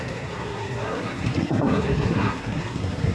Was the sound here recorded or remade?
remade